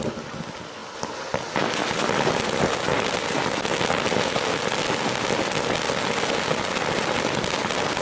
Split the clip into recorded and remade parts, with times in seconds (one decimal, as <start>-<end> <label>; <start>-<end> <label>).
0.0-8.0 recorded